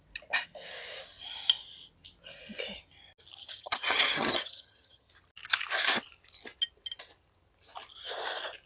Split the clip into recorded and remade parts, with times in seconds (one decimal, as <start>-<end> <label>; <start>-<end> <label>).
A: 0.0-3.4 recorded; 3.4-5.1 remade; 5.1-8.7 recorded